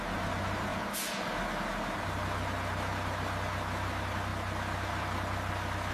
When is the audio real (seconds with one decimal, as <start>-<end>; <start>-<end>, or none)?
0.0-5.9